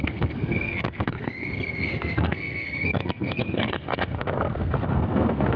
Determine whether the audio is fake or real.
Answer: fake